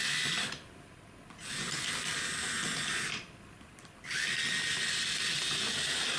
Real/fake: real